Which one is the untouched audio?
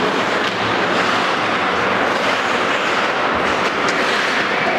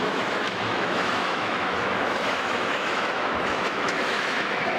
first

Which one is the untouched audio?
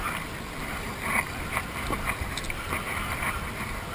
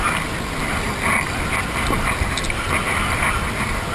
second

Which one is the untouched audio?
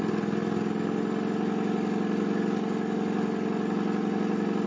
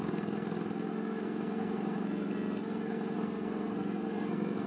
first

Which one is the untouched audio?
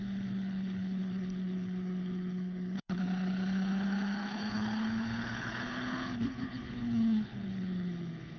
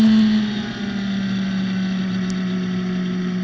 second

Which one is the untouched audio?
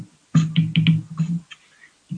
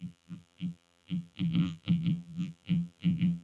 first